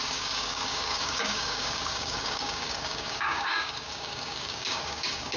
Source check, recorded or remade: remade